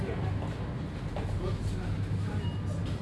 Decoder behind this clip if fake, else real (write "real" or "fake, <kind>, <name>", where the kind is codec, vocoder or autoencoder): real